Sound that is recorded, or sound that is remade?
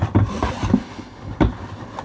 recorded